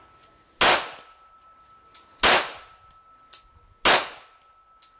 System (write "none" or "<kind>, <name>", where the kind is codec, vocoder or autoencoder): none